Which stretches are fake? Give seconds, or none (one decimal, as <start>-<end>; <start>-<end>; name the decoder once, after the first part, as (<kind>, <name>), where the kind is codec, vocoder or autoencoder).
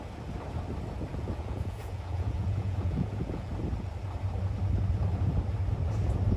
1.1-3.5 (vocoder, Vocos)